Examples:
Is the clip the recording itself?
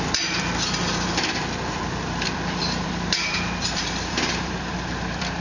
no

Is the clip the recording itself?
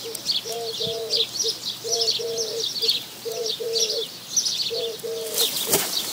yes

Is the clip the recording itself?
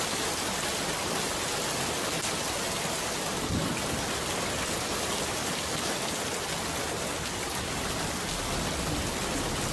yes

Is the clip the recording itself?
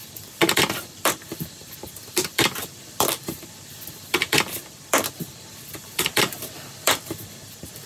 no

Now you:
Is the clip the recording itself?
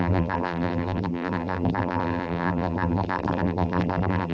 no